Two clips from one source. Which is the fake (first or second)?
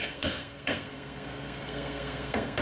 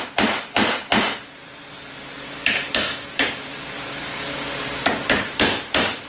first